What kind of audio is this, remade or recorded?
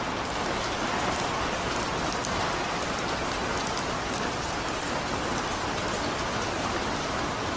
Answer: recorded